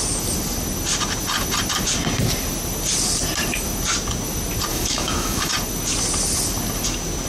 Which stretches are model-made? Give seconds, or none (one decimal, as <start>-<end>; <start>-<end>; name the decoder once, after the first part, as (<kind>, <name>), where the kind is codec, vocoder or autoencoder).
4.7-5.5 (autoencoder, DAC-VAE)